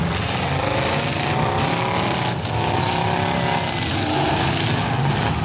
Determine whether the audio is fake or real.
real